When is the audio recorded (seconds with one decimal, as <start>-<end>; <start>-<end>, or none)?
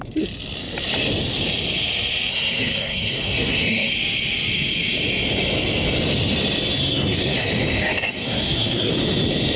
0.0-2.3; 3.9-6.8; 7.5-8.2; 8.9-9.6